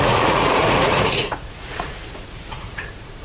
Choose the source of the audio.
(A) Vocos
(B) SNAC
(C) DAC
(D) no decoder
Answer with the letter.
A